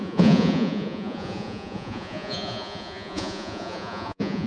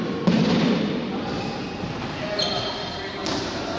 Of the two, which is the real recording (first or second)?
second